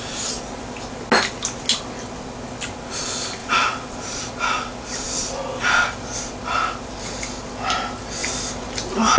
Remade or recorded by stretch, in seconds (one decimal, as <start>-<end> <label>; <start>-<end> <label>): 0.0-3.4 recorded; 3.4-4.2 remade; 4.2-4.7 recorded; 4.7-6.9 remade; 6.9-9.2 recorded